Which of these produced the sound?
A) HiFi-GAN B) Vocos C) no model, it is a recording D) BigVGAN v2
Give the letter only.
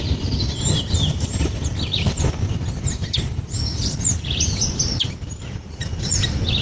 C